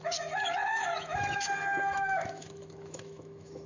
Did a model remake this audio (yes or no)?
yes